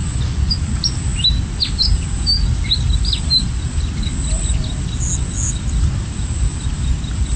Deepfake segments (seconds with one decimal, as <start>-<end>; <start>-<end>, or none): 0.0-0.5